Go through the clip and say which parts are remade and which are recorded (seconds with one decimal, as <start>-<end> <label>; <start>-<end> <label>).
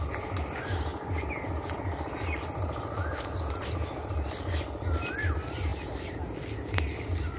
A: 0.0-7.4 recorded